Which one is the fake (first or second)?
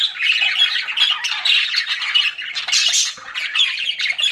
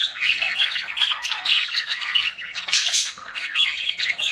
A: second